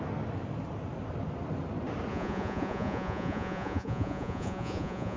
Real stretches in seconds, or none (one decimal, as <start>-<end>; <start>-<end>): 0.0-2.1